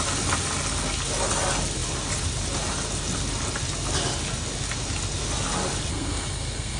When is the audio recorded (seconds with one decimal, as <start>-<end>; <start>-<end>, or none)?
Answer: 0.0-5.9